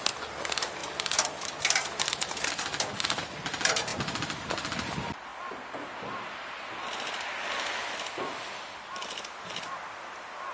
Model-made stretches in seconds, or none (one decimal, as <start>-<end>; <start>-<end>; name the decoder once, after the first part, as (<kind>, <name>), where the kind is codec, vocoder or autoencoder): 0.0-5.3 (vocoder, BigVGAN v2); 9.7-10.5